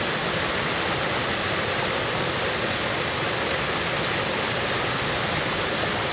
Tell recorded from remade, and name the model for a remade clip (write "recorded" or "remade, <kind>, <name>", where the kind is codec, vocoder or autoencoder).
recorded